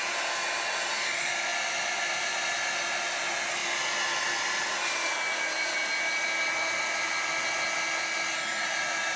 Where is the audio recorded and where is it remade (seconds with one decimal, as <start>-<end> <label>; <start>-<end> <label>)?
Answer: 0.0-9.2 recorded